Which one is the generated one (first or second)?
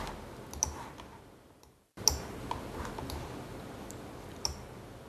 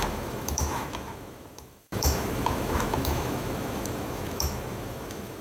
second